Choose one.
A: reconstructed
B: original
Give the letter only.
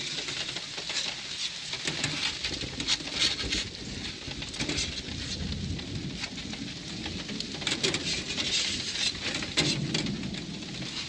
B